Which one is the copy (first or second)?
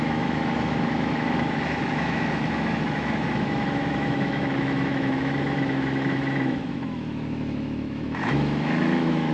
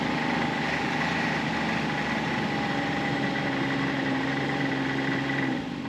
first